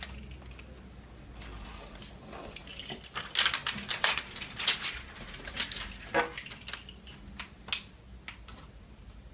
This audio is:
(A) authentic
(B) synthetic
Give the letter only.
A